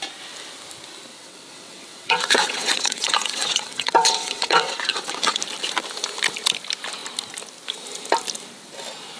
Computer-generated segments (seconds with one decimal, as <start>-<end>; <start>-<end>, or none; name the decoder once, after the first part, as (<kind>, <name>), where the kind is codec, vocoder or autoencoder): 1.1-5.4 (vocoder, WaveNeXt)